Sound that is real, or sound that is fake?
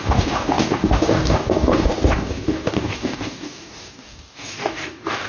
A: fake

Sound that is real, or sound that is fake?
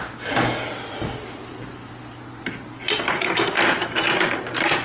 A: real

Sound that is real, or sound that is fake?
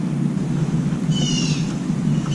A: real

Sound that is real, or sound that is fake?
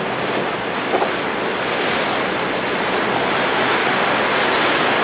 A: real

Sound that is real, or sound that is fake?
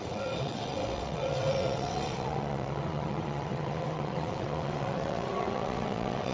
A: fake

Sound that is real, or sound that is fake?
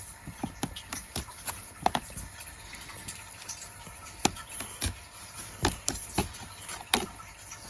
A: fake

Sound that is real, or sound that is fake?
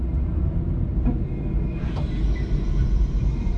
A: fake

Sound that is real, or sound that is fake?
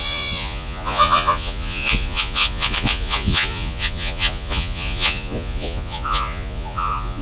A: fake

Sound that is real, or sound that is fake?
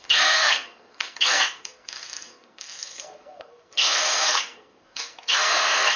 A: fake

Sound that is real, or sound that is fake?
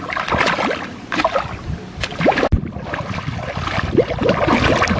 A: real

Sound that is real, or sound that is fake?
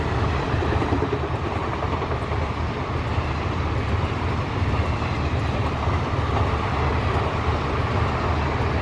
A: fake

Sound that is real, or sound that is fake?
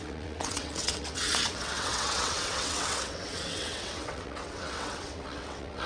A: fake